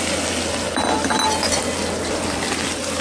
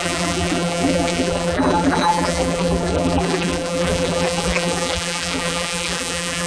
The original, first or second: first